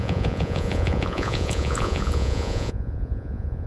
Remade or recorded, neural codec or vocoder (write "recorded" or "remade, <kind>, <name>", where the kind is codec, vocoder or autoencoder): remade, vocoder, Vocos